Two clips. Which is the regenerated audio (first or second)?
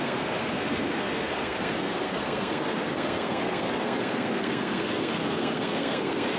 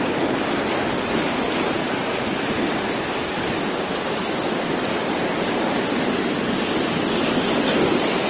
first